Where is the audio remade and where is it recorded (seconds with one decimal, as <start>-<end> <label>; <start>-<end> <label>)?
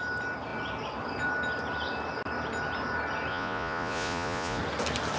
0.0-3.3 recorded; 3.3-4.6 remade; 4.6-5.2 recorded